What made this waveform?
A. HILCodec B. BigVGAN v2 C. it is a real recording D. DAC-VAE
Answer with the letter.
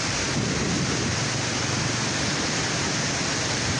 C